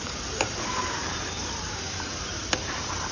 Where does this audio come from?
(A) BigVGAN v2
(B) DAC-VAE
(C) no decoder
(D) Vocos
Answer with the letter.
A